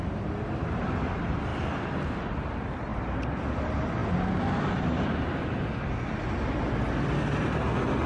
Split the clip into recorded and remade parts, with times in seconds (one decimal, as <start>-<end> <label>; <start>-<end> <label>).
0.0-2.9 recorded; 2.9-3.4 remade; 3.4-8.1 recorded